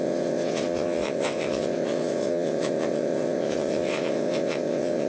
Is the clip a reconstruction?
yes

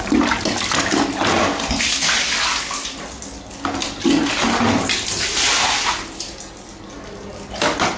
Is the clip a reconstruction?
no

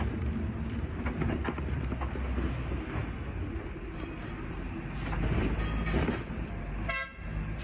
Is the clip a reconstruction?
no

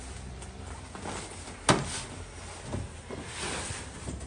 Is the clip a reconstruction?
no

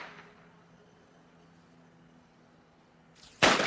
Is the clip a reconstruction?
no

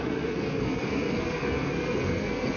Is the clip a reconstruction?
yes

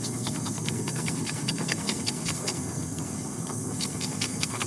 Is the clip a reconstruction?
yes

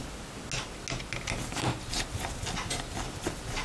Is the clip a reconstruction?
no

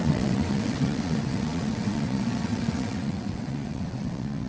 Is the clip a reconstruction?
yes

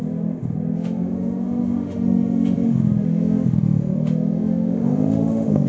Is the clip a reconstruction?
yes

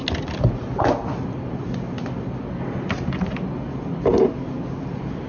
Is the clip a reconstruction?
no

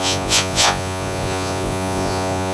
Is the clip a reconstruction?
yes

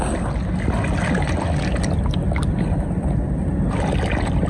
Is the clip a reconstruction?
no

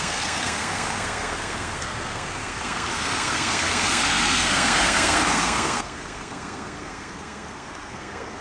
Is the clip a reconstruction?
yes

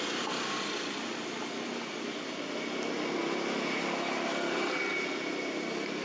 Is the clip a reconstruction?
no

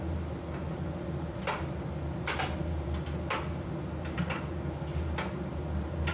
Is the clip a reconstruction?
no